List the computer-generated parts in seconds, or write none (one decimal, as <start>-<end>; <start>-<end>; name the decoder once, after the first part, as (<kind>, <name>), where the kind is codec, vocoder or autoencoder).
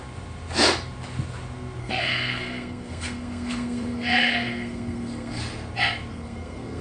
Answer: 1.8-5.4 (codec, SNAC); 6.1-6.8